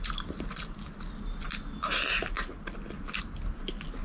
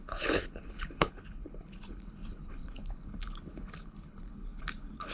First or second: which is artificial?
second